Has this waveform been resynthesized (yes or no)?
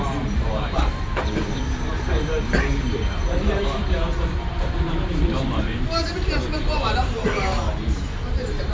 yes